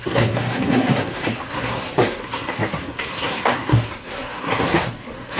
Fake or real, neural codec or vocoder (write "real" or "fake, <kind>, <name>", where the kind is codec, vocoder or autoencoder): fake, codec, SNAC